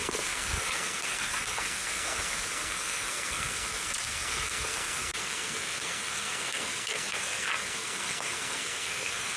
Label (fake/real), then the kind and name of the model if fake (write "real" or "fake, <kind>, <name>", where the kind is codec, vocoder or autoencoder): fake, codec, SNAC